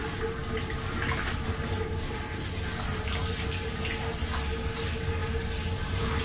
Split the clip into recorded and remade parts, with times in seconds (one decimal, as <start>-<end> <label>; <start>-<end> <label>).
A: 0.0-6.2 recorded